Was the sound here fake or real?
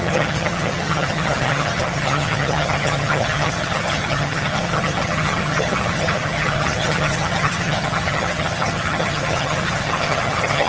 fake